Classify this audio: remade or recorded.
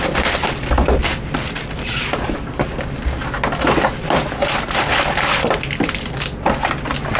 recorded